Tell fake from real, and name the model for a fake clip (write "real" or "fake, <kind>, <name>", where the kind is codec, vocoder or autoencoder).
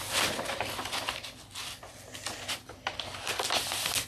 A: real